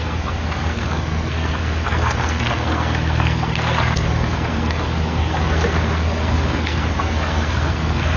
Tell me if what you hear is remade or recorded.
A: remade